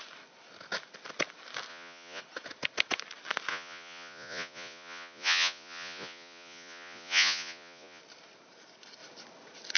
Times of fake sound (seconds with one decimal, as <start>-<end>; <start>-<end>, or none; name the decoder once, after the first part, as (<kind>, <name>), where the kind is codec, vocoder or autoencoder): 1.7-2.2 (vocoder, Vocos); 3.5-8.0

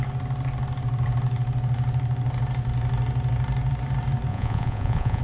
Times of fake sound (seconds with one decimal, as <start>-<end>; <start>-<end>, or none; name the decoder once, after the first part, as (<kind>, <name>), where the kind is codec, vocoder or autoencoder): 4.3-5.2 (vocoder, Vocos)

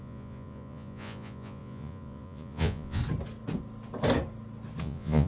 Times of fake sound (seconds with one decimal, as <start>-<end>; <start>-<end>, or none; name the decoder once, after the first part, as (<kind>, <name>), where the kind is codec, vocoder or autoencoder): 0.0-3.0 (vocoder, Vocos); 4.8-5.3

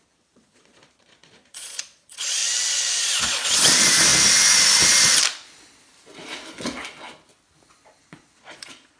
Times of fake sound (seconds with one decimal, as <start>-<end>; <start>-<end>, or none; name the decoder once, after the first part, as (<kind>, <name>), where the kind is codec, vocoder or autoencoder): 0.0-2.4 (vocoder, Vocos); 3.0-4.1; 8.0-9.0

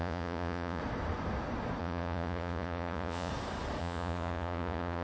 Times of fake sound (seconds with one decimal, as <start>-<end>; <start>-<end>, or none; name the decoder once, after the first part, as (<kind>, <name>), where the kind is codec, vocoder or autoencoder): 0.0-0.8 (vocoder, Vocos); 1.8-3.3; 3.8-5.0